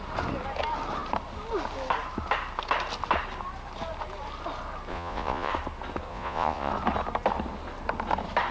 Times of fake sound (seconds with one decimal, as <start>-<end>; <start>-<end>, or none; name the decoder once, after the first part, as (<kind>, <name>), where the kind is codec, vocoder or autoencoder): 4.9-5.5 (vocoder, Vocos); 6.1-6.7